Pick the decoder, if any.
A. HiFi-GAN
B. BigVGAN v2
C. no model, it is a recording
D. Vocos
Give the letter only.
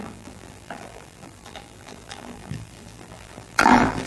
B